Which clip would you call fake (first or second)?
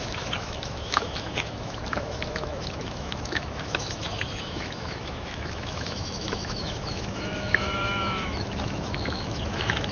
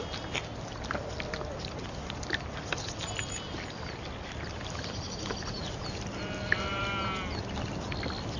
first